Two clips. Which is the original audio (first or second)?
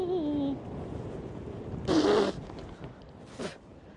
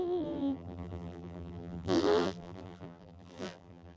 first